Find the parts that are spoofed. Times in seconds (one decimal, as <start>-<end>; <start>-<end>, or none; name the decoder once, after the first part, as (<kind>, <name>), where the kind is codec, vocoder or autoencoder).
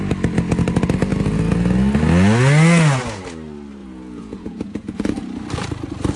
3.8-5.1 (vocoder, Vocos)